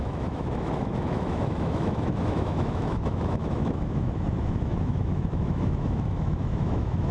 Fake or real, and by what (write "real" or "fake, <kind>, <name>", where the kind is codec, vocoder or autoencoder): fake, autoencoder, DAC-VAE